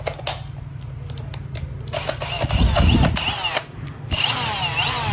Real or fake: real